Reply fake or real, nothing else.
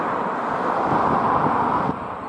real